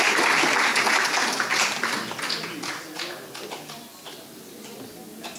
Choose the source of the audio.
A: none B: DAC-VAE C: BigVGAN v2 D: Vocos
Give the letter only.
A